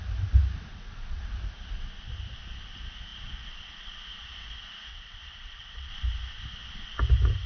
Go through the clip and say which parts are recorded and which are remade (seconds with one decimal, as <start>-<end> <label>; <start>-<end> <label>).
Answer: 0.0-0.7 recorded; 0.7-1.2 remade; 1.2-4.9 recorded; 4.9-5.9 remade; 5.9-7.5 recorded